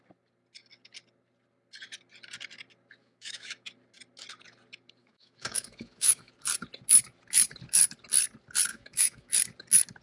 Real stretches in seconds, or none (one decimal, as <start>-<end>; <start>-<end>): 0.0-3.0; 3.7-5.0; 6.3-8.7; 9.3-10.0